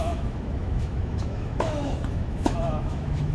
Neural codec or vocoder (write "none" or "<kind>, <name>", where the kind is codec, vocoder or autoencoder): autoencoder, DAC-VAE